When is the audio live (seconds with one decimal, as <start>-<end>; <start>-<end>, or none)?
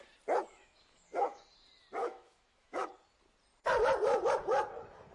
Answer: 0.0-0.5; 1.4-2.0; 2.9-5.1